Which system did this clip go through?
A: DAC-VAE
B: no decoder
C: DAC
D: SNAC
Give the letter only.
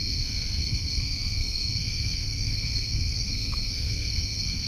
D